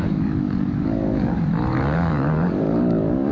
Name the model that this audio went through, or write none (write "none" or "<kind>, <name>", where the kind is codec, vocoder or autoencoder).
codec, DAC